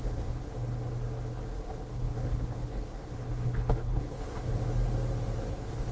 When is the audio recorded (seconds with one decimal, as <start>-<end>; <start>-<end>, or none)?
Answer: 0.4-1.7; 4.5-5.5